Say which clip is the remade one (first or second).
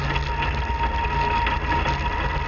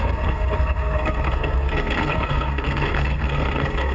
second